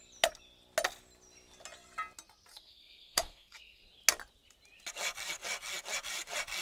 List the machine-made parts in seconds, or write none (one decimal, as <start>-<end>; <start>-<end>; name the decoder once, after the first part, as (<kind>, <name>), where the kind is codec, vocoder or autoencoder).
2.5-3.8 (codec, SNAC)